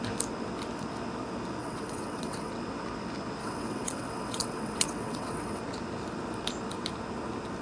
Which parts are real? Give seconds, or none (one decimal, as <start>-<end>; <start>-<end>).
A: 0.0-1.6; 2.5-3.4; 5.6-7.6